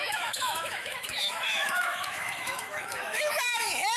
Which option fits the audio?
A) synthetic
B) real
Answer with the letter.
A